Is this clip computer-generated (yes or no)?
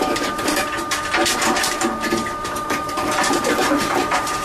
yes